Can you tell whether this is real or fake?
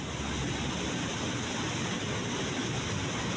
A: real